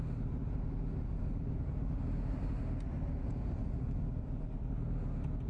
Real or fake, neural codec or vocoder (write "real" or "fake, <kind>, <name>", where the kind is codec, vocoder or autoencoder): real